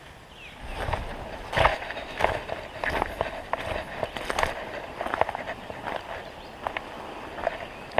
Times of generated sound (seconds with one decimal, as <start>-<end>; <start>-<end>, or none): 1.7-2.4